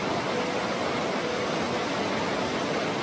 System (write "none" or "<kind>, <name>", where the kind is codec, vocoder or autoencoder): none